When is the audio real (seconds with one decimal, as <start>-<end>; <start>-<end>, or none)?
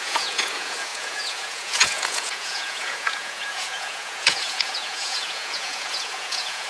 none